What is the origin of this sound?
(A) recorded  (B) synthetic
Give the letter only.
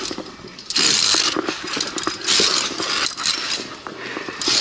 A